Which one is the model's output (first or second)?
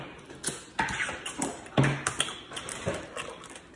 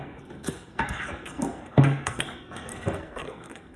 second